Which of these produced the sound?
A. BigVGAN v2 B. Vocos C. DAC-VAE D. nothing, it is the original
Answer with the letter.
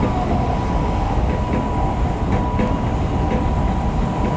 D